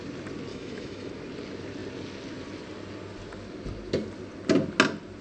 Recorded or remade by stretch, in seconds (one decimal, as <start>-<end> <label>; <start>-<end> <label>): 0.0-0.5 recorded; 0.5-1.1 remade; 1.1-5.2 recorded

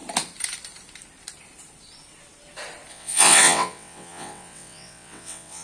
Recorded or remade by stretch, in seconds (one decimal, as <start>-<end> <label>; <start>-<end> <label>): 0.0-2.9 recorded; 2.9-5.6 remade